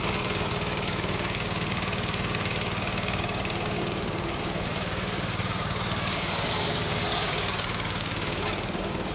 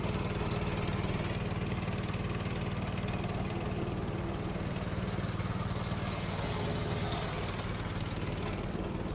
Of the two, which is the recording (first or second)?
second